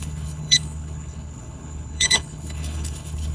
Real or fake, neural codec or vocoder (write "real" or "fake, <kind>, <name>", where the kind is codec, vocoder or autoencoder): fake, codec, HILCodec